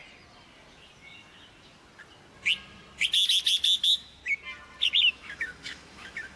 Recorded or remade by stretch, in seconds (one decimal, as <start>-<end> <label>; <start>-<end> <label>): 0.0-3.8 recorded; 3.8-4.2 remade; 4.2-5.1 recorded; 5.1-6.4 remade